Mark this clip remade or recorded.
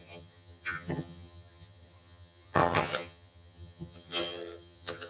remade